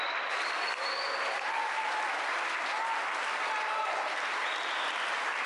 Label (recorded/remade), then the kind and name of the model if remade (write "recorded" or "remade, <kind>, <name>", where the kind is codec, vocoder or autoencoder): recorded